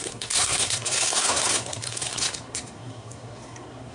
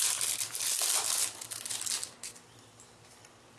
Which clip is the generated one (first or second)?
first